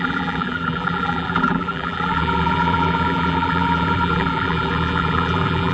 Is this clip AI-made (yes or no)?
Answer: yes